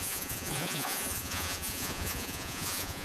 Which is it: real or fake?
fake